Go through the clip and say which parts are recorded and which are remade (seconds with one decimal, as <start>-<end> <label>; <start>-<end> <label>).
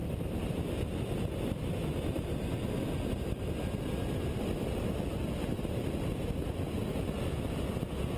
0.0-8.2 recorded